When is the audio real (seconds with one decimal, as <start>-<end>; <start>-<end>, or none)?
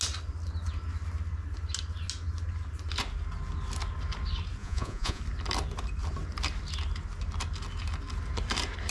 0.0-4.6; 5.2-8.9